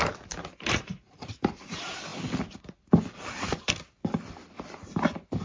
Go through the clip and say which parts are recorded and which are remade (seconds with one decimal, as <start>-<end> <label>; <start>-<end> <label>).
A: 0.0-2.1 remade; 2.1-5.4 recorded